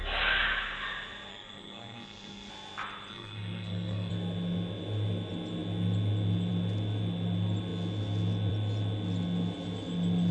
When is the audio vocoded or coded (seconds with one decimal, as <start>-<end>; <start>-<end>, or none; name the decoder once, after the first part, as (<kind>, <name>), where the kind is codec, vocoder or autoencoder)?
1.3-2.5 (codec, SNAC); 3.1-4.1